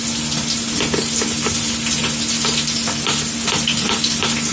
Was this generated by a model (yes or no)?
no